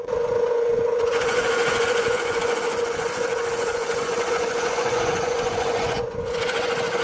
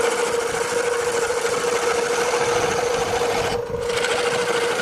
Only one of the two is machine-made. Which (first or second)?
first